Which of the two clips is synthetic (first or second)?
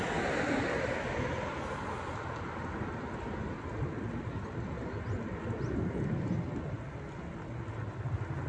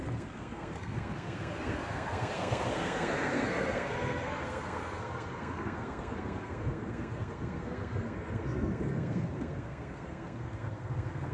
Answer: second